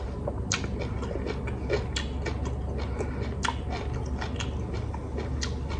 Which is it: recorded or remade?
recorded